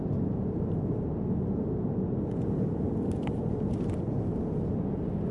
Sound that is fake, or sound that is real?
real